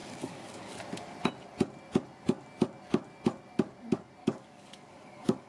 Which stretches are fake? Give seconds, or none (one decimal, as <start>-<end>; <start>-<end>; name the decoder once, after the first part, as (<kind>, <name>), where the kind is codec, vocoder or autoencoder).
0.0-0.8 (codec, DAC); 4.2-5.5